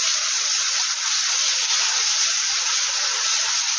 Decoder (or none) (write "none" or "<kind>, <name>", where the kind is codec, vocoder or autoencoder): none